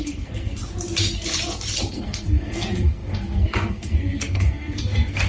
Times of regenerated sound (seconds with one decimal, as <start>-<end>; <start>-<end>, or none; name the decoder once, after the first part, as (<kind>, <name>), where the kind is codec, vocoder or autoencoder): 0.0-0.6 (codec, SNAC); 1.9-5.3